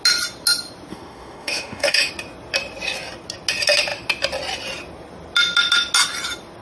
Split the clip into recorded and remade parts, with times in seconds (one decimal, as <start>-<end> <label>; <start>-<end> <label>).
0.0-0.9 recorded; 0.9-2.1 remade; 2.1-6.6 recorded